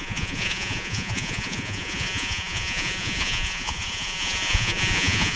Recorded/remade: remade